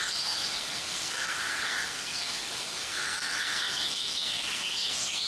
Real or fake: fake